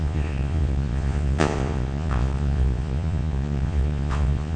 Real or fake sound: fake